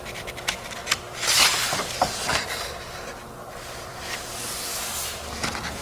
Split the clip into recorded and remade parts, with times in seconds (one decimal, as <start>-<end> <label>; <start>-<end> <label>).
0.0-1.1 recorded; 1.1-2.4 remade; 2.4-5.8 recorded